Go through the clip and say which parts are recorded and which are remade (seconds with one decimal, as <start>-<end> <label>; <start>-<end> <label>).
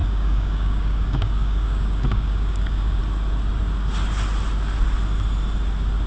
0.0-3.0 remade; 3.0-6.1 recorded